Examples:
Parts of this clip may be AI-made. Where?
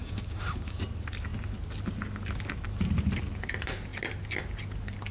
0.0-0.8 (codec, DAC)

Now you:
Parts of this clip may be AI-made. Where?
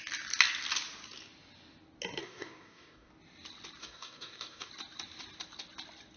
2.2-3.1 (codec, DAC); 3.8-4.7